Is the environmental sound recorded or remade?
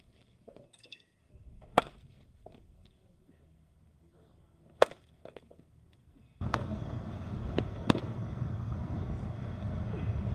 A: remade